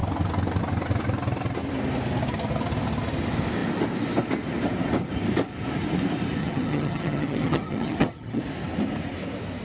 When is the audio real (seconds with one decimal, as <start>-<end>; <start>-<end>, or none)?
0.0-6.4; 8.4-9.6